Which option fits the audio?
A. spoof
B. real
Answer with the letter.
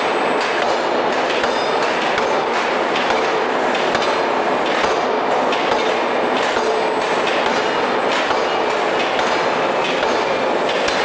B